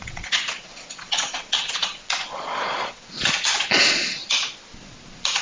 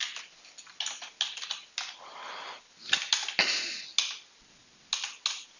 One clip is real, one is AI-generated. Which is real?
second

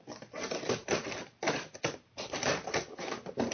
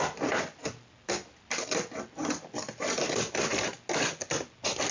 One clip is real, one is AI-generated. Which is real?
second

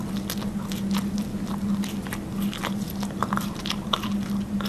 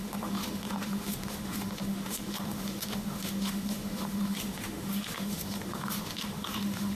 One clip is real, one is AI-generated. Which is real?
first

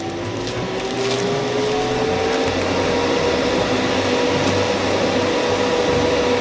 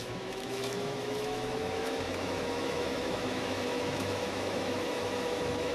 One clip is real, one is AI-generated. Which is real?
first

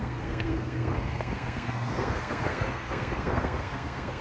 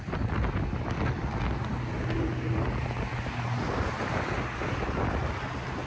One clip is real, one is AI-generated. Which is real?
second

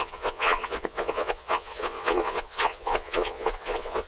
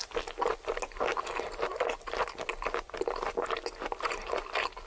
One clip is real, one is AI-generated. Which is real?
second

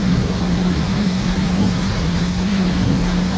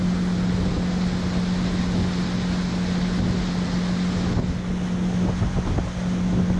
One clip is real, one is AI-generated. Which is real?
second